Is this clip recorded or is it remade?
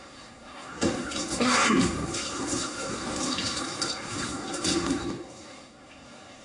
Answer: remade